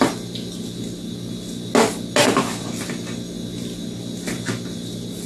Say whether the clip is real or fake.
real